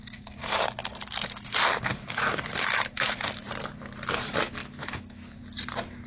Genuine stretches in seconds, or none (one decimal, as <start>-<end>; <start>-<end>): 0.0-1.9; 3.5-4.6; 5.4-6.1